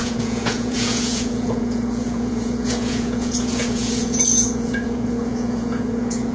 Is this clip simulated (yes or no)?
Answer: yes